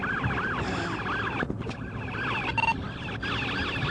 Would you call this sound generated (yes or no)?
no